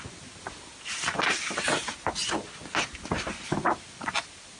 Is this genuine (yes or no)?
yes